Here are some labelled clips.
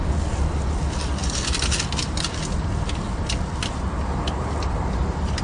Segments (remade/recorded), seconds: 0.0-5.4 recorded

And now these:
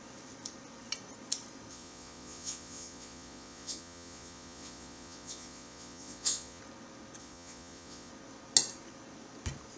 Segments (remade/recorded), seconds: 0.0-1.7 recorded; 1.7-6.6 remade; 6.6-7.2 recorded; 7.2-8.1 remade; 8.1-9.8 recorded

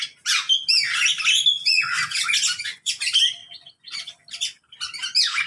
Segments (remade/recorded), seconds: 0.0-1.6 recorded; 1.6-3.0 remade; 3.0-3.4 recorded; 3.4-4.1 remade; 4.1-5.5 recorded

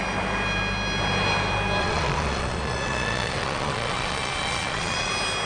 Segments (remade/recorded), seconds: 0.0-1.8 recorded; 1.8-5.1 remade; 5.1-5.5 recorded

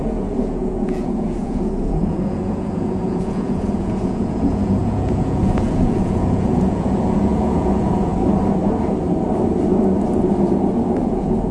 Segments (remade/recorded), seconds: 0.0-8.1 remade; 8.1-11.0 recorded; 11.0-11.5 remade

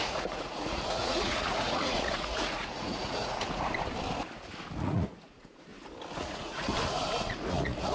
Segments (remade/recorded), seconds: 0.0-3.7 remade; 3.7-4.8 recorded; 4.8-5.7 remade; 5.7-6.2 recorded; 6.2-6.7 remade; 6.7-7.2 recorded; 7.2-7.9 remade

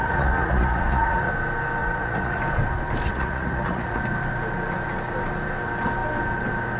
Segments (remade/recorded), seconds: 0.0-1.3 remade; 1.3-1.8 recorded; 1.8-2.4 remade; 2.4-3.1 recorded; 3.1-4.0 remade; 4.0-6.8 recorded

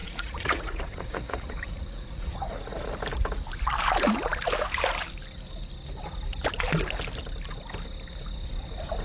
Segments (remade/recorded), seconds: 0.0-2.9 remade; 2.9-9.0 recorded